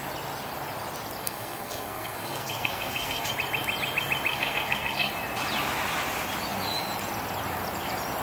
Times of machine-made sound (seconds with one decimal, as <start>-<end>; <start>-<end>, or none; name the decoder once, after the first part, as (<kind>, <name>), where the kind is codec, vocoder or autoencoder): 1.2-3.3 (codec, SNAC); 4.3-5.1